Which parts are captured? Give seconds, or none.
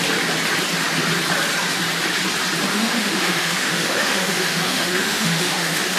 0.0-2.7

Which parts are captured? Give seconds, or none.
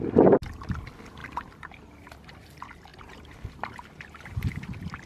0.0-1.2; 2.3-2.9; 3.8-5.1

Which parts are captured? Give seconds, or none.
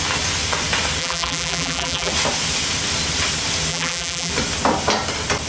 0.0-1.0; 2.1-3.7; 4.3-5.5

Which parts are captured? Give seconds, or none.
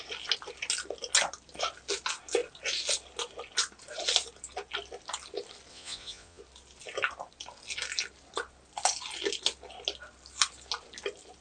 0.0-5.7; 6.4-11.4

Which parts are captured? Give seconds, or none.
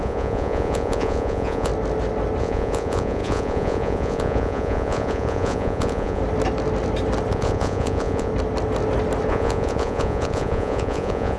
1.7-2.4; 6.2-7.3; 8.3-9.3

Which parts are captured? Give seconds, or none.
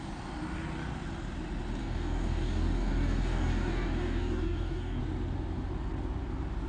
0.0-1.8; 5.0-6.7